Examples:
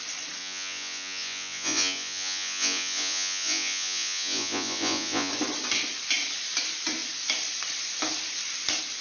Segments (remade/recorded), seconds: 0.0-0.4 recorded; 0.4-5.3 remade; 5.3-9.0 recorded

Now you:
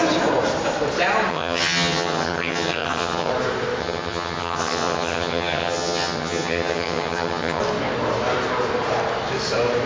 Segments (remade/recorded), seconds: 0.0-1.3 recorded; 1.3-3.3 remade; 3.3-3.8 recorded; 3.8-7.6 remade; 7.6-9.9 recorded

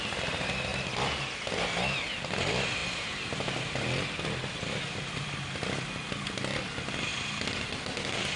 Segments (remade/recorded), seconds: 0.0-0.7 recorded; 0.7-1.5 remade; 1.5-8.4 recorded